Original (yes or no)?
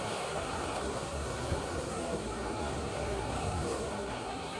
no